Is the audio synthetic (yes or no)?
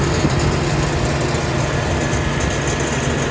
no